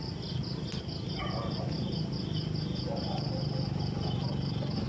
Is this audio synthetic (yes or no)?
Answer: no